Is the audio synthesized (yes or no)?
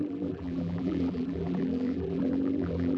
yes